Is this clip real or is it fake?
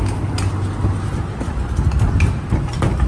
real